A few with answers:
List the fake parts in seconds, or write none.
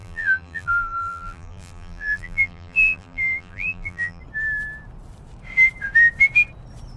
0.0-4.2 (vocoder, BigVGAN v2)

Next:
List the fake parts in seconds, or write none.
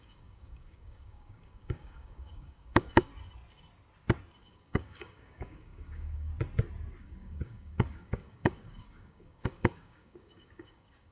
0.0-3.1 (codec, DAC); 4.4-6.3; 7.0-11.1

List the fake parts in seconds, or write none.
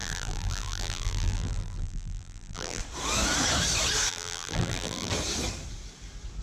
0.0-2.8 (vocoder, BigVGAN v2); 4.1-5.1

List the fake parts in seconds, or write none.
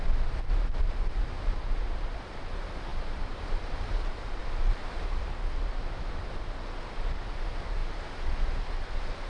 2.9-4.4 (vocoder, BigVGAN v2); 5.6-6.3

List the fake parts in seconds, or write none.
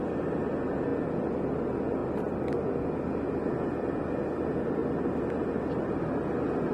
none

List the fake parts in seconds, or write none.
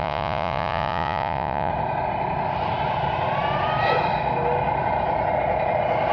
0.0-1.7 (vocoder, Vocos)